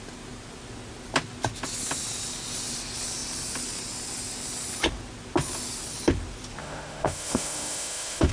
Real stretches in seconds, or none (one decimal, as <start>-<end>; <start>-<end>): 0.0-6.6